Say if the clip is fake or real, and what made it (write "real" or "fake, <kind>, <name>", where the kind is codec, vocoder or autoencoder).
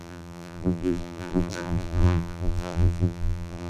fake, vocoder, BigVGAN v2